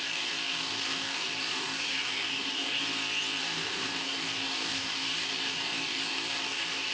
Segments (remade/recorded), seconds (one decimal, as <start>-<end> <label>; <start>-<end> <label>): 0.0-2.8 remade; 2.8-3.4 recorded; 3.4-6.9 remade